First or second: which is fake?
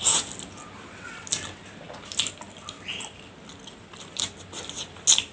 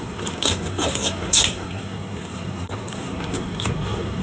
second